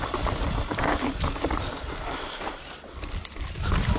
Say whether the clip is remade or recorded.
recorded